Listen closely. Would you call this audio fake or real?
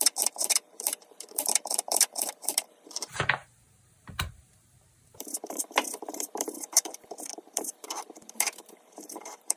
fake